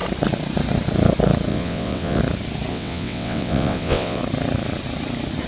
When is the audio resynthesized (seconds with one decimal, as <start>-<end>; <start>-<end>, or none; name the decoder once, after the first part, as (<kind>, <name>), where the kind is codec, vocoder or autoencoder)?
1.5-2.2 (vocoder, WaveNeXt); 2.7-4.2